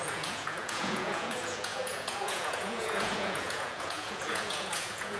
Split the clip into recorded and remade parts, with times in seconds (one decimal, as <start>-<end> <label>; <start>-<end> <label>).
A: 0.0-5.2 remade